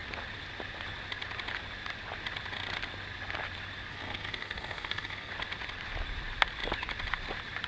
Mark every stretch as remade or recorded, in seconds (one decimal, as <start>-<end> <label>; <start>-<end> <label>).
0.0-3.9 recorded; 3.9-5.3 remade; 5.3-7.7 recorded